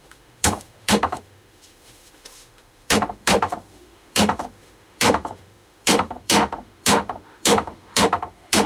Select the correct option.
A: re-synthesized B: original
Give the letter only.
A